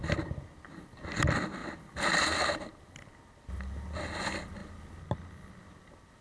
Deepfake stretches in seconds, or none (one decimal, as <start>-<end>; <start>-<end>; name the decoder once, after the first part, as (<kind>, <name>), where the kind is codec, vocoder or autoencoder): none